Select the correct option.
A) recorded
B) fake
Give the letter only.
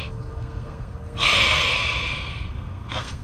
B